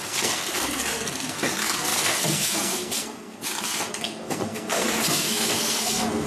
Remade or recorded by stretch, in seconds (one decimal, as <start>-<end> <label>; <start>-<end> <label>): 0.0-6.3 remade